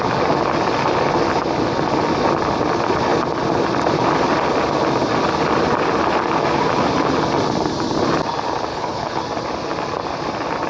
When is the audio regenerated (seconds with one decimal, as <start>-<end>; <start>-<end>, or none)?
8.7-9.2